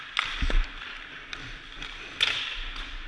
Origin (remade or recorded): recorded